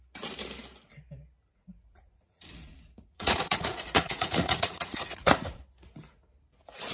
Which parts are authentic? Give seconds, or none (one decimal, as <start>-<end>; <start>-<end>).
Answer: 0.0-1.5; 5.6-6.9